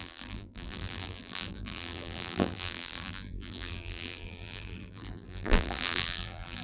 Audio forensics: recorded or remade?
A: remade